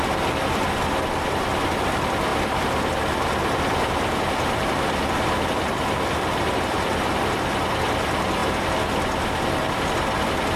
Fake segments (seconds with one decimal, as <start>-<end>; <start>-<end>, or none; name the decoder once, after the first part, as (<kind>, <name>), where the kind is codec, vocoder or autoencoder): none